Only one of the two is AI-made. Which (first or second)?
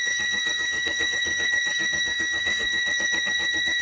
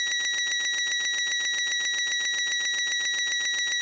first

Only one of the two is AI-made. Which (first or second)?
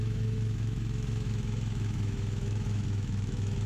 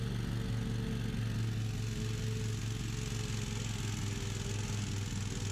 first